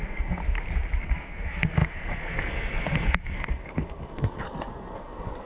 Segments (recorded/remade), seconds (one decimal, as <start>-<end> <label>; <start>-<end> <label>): 0.0-0.4 remade; 0.4-1.0 recorded; 1.0-5.5 remade